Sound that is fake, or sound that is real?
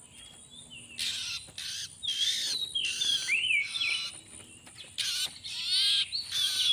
real